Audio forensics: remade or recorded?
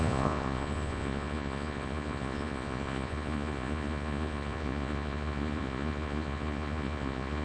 remade